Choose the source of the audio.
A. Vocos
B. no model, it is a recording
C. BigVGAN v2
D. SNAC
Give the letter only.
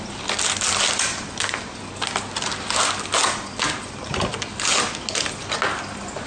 B